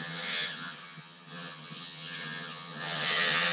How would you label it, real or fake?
fake